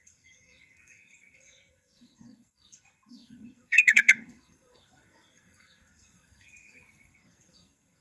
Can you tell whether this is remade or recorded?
remade